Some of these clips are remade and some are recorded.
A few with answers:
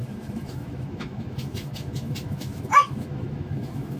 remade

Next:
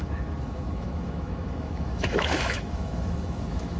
remade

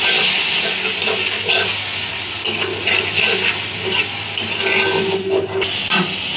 recorded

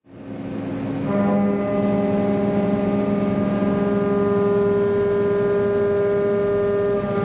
recorded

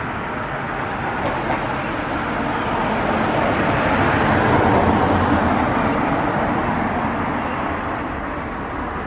recorded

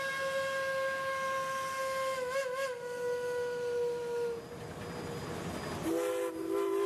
recorded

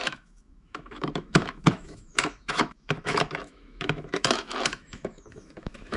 remade